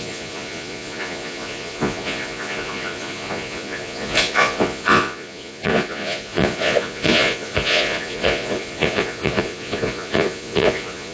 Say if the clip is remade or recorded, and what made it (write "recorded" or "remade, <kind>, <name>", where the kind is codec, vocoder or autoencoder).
remade, vocoder, Vocos